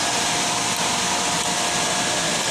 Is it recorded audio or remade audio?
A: recorded